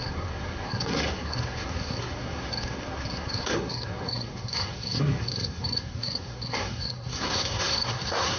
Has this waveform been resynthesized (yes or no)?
yes